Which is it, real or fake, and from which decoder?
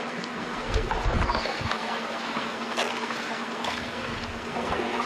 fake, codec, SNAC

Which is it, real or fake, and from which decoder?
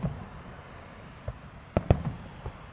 real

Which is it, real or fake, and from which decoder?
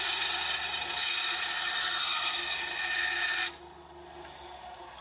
real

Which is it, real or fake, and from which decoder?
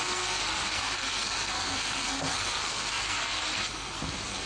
fake, codec, SNAC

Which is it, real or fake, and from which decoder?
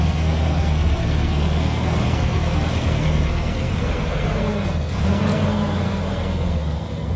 fake, codec, SNAC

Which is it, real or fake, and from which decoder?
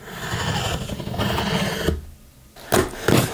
real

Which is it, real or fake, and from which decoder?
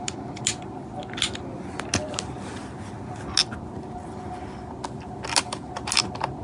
real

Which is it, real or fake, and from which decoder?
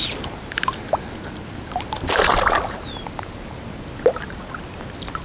real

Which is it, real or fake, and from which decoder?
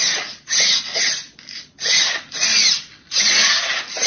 real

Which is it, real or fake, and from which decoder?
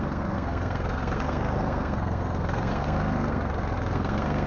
fake, codec, SNAC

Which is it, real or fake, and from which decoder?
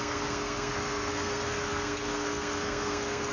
fake, codec, SNAC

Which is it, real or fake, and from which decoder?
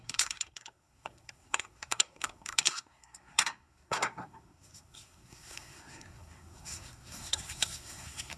fake, codec, SNAC